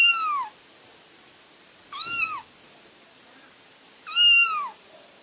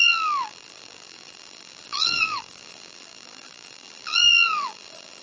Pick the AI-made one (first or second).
second